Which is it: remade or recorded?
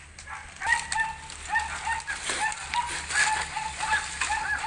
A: recorded